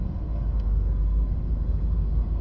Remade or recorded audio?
remade